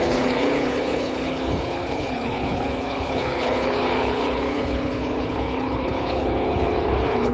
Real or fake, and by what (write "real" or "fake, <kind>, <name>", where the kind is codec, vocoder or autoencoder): fake, codec, HILCodec